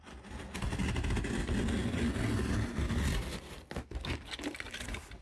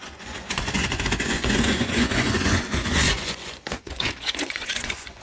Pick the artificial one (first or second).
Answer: second